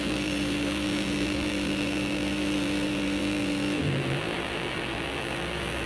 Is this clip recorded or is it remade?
remade